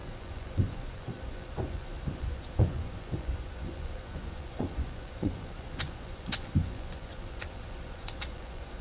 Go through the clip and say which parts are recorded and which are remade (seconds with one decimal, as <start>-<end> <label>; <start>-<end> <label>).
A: 0.0-8.8 remade